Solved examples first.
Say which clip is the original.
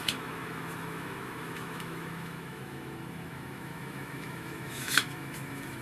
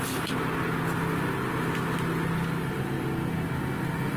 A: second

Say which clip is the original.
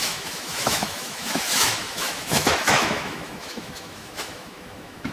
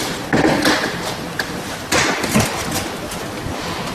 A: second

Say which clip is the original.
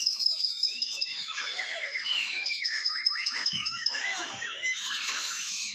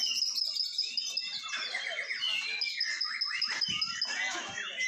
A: second